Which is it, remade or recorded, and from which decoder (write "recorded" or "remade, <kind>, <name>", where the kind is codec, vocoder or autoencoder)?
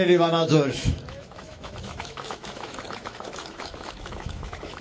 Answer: remade, autoencoder, DAC-VAE